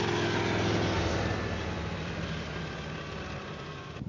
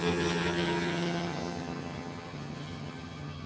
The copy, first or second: second